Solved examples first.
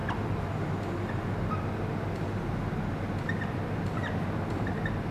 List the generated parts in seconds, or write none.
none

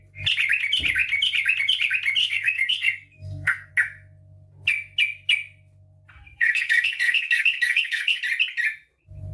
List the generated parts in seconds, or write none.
2.2-3.7 (codec, SNAC); 6.4-8.2